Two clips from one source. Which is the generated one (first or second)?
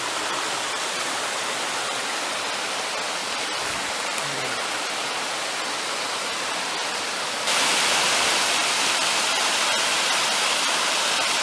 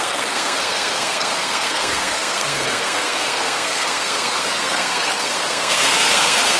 second